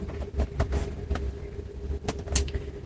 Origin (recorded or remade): recorded